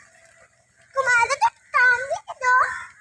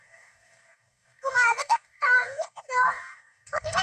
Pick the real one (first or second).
first